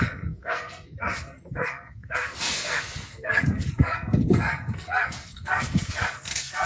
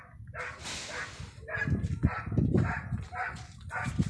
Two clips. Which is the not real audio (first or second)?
first